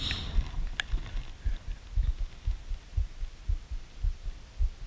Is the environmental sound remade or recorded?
recorded